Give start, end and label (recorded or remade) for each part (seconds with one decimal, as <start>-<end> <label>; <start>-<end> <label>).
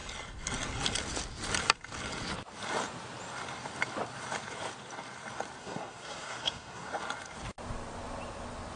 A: 0.0-5.6 recorded; 5.6-6.9 remade; 6.9-8.8 recorded